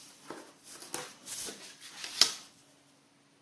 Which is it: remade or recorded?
recorded